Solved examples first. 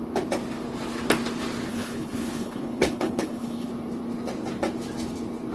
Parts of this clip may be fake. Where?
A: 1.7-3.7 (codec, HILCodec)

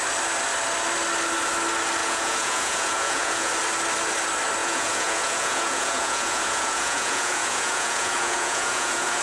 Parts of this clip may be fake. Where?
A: 2.0-3.5 (vocoder, Vocos); 4.6-9.2

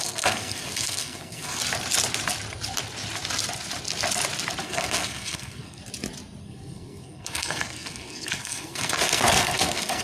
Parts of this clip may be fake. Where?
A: 0.0-1.6 (codec, SNAC); 4.6-5.8; 6.4-10.0

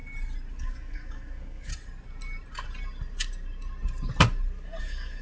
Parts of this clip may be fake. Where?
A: 0.6-1.7 (codec, DAC); 4.8-5.2

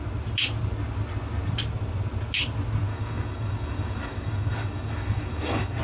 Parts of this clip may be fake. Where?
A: 2.9-5.8 (codec, DAC)

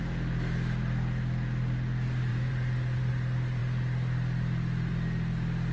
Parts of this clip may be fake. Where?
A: 2.3-3.1 (vocoder, BigVGAN v2)